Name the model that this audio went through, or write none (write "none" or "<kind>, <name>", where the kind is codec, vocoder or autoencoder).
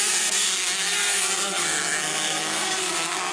codec, SNAC